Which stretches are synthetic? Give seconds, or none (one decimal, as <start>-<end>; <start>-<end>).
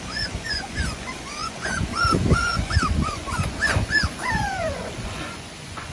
0.0-5.9